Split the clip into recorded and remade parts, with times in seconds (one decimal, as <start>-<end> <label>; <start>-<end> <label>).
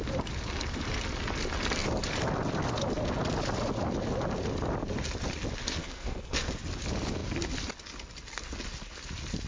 0.0-5.8 recorded; 5.8-6.5 remade; 6.5-9.5 recorded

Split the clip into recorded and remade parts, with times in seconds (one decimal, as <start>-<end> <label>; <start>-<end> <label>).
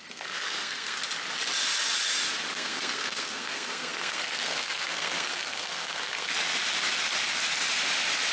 0.0-1.0 remade; 1.0-2.5 recorded; 2.5-6.3 remade; 6.3-8.3 recorded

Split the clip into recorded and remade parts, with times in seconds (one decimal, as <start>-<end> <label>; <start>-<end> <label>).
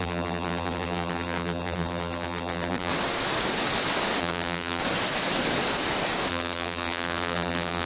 0.0-2.9 remade; 2.9-4.2 recorded; 4.2-4.8 remade; 4.8-6.3 recorded; 6.3-7.9 remade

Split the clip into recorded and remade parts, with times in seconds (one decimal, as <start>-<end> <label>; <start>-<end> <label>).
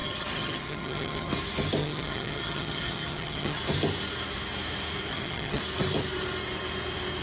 0.0-1.3 remade; 1.3-1.8 recorded; 1.8-3.6 remade; 3.6-5.1 recorded; 5.1-5.6 remade; 5.6-7.2 recorded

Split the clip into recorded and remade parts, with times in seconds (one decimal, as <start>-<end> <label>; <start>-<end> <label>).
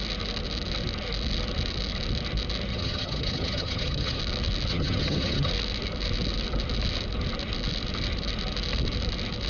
0.0-2.7 recorded; 2.7-4.2 remade; 4.2-4.7 recorded; 4.7-5.5 remade; 5.5-9.5 recorded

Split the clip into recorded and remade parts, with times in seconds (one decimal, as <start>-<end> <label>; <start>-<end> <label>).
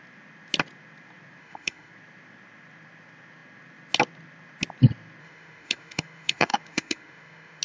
0.0-1.4 recorded; 1.4-1.9 remade; 1.9-5.2 recorded; 5.2-7.6 remade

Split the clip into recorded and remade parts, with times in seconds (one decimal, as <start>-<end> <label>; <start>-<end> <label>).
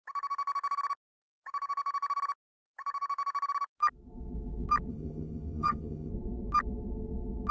0.0-4.9 recorded; 4.9-6.1 remade; 6.1-7.5 recorded